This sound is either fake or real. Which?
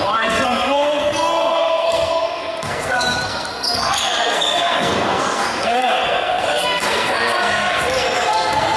fake